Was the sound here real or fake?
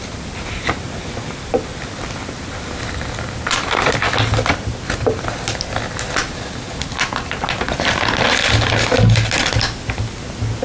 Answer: real